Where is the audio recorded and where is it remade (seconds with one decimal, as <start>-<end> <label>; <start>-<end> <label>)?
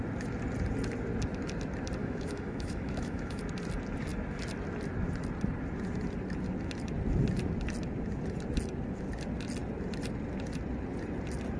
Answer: 0.0-2.0 recorded; 2.0-3.4 remade; 3.4-11.6 recorded